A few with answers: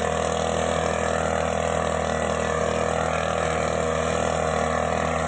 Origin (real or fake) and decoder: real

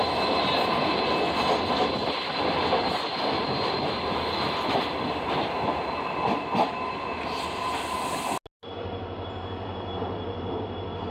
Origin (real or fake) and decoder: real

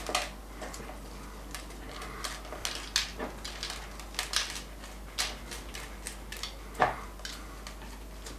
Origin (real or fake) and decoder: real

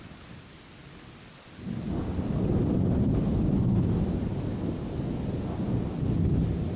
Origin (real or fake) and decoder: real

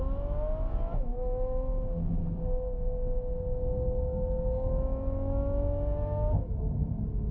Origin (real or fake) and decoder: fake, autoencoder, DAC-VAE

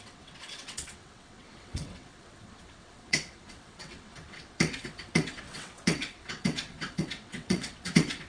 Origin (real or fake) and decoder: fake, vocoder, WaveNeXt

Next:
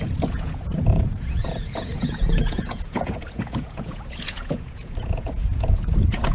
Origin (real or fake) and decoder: fake, vocoder, Vocos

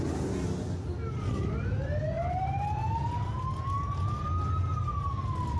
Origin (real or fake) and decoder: real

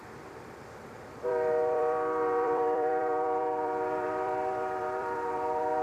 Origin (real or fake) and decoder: fake, vocoder, BigVGAN v2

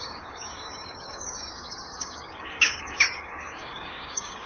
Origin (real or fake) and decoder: fake, codec, DAC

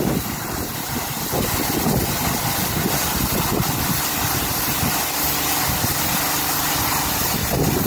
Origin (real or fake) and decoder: real